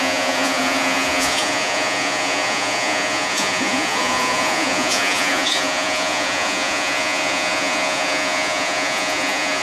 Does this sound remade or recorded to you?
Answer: remade